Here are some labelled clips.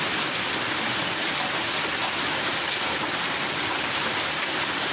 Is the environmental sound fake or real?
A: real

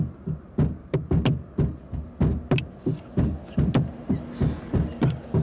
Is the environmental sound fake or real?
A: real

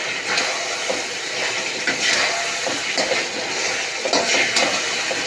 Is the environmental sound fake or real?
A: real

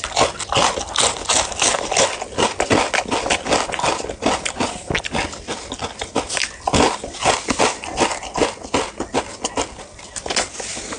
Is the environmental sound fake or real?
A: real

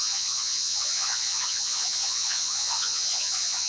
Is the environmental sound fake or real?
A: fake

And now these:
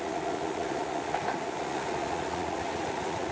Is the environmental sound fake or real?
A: fake